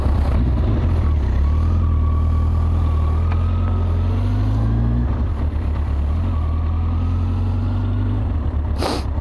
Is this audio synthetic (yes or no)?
no